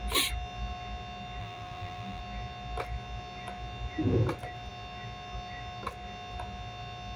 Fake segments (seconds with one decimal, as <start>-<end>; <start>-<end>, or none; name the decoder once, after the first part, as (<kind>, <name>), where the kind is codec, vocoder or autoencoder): 1.4-2.2 (vocoder, BigVGAN v2)